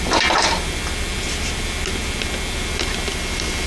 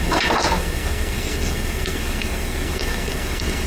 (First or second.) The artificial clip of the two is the second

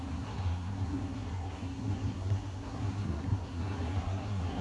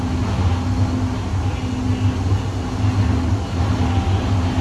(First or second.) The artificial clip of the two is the first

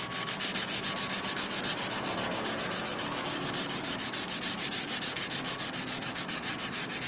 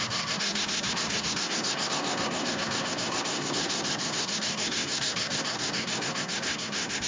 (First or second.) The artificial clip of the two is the second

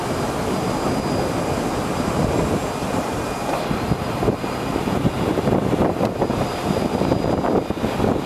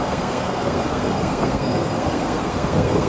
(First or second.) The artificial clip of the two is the second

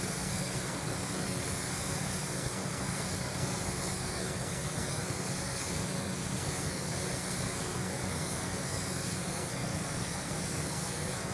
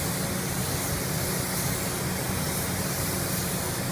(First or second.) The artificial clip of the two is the first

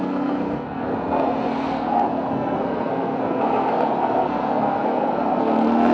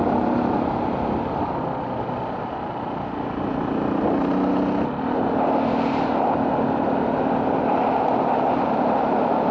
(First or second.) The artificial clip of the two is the first